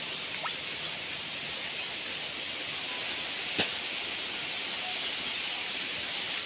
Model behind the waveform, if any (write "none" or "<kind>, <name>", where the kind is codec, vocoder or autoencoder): none